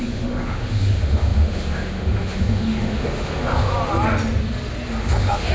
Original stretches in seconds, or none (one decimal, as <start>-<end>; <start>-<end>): 3.7-5.0